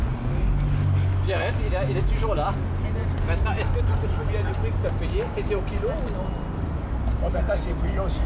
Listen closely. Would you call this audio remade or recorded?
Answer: recorded